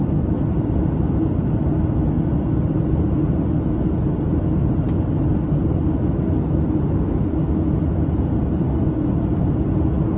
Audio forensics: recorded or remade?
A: recorded